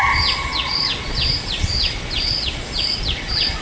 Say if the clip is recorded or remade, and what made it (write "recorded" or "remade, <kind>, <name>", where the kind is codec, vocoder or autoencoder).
remade, vocoder, Vocos